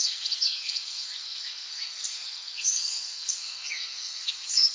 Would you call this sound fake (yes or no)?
yes